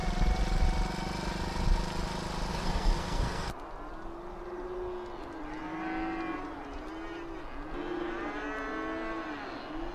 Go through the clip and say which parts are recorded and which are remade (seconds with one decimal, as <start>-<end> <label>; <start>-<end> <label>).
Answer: 0.0-2.5 recorded; 2.5-3.5 remade; 3.5-9.9 recorded